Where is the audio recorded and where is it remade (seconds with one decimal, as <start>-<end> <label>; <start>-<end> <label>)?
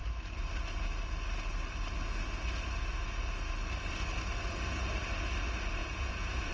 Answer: 0.0-5.8 recorded; 5.8-6.5 remade